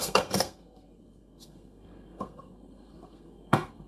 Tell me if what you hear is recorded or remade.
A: remade